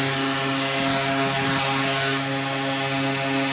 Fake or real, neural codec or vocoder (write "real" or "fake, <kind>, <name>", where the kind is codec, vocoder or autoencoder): real